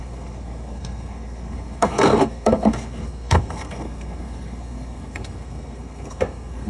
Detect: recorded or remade remade